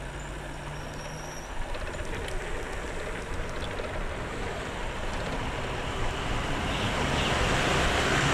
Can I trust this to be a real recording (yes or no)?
yes